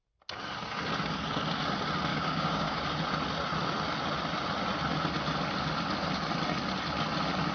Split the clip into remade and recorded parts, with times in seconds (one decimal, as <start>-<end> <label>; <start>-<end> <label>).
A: 0.0-2.1 recorded; 2.1-2.8 remade; 2.8-7.5 recorded